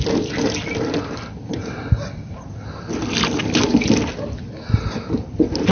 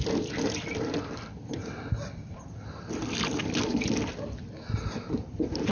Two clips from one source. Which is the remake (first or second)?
second